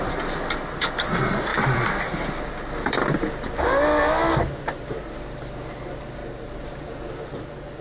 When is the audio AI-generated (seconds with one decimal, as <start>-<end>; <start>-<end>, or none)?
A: none